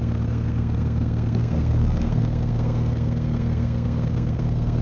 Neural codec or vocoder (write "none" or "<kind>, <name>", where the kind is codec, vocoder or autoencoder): codec, SNAC